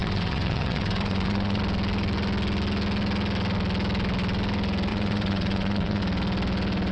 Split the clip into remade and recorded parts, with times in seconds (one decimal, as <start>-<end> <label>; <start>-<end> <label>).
0.0-1.6 remade; 1.6-4.9 recorded; 4.9-6.0 remade; 6.0-6.9 recorded